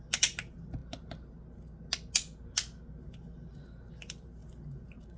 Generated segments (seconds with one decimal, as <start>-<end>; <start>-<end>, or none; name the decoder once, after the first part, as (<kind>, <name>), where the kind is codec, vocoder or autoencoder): none